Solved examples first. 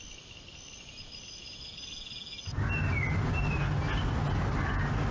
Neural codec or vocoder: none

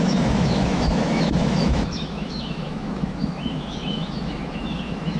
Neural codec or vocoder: autoencoder, DAC-VAE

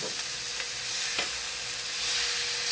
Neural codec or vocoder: none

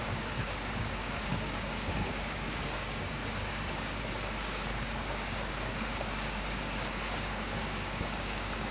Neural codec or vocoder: codec, DAC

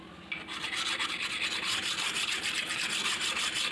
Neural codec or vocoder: none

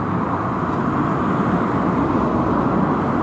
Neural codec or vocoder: none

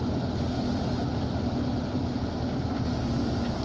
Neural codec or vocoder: none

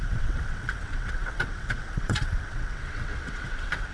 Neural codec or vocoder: vocoder, WaveNeXt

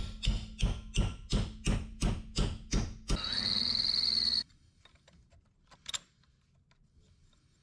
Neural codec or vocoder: none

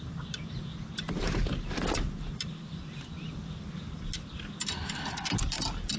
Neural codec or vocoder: none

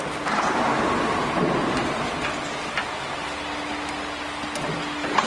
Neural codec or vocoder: none